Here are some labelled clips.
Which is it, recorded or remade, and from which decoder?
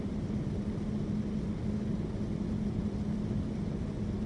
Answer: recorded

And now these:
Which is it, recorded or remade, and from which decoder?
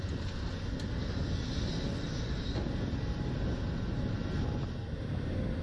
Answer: recorded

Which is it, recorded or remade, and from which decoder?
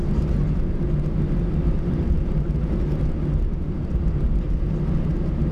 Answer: recorded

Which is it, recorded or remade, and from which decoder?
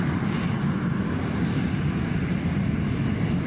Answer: recorded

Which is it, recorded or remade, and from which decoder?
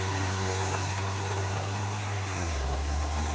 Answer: remade, codec, SNAC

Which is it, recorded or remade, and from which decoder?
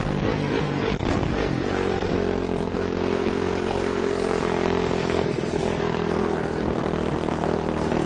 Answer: remade, codec, SNAC